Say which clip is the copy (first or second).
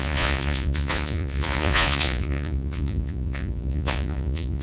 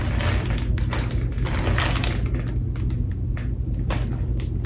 first